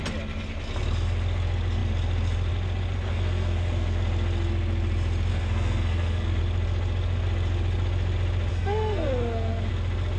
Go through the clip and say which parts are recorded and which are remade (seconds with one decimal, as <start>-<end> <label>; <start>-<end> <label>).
0.0-3.1 recorded; 3.1-4.0 remade; 4.0-5.3 recorded; 5.3-6.4 remade; 6.4-8.5 recorded; 8.5-9.7 remade; 9.7-10.2 recorded